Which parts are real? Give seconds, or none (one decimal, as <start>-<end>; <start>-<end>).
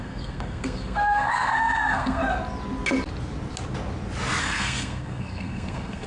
2.2-4.4